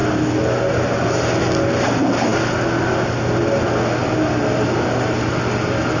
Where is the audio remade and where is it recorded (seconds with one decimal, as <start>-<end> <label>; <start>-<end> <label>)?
0.0-6.0 recorded